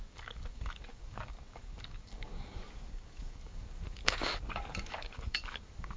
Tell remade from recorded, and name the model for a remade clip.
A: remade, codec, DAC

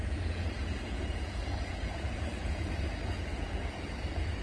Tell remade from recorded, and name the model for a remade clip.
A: remade, vocoder, Vocos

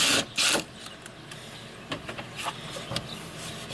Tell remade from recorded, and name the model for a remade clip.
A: recorded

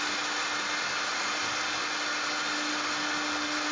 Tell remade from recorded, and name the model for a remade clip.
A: recorded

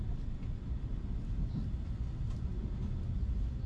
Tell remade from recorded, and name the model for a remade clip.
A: recorded